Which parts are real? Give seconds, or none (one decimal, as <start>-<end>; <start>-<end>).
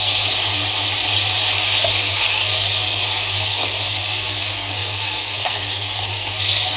0.6-1.9